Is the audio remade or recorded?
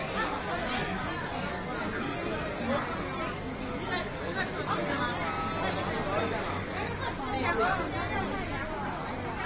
recorded